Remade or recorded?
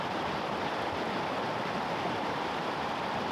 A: recorded